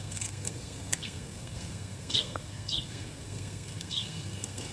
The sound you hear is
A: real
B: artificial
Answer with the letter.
B